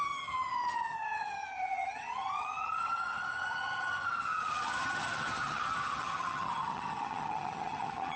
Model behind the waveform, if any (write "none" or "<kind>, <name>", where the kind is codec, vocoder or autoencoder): vocoder, HiFi-GAN